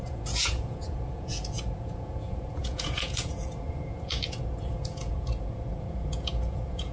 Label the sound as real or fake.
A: fake